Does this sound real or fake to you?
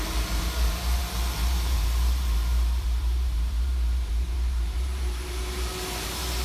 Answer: fake